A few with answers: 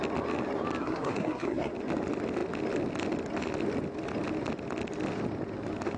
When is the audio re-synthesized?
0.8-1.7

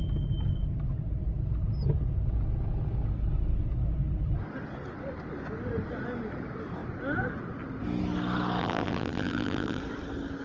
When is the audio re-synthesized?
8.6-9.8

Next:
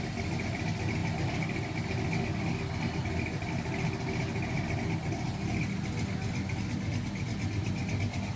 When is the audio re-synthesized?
none

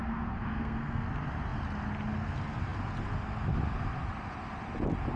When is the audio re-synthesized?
0.0-1.1

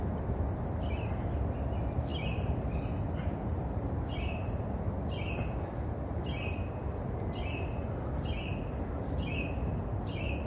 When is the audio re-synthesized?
none

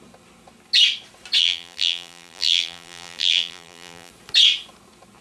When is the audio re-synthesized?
1.4-4.1

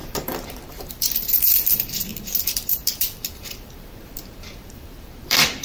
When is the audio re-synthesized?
0.0-5.6